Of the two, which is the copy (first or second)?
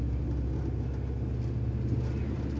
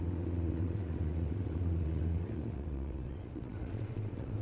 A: second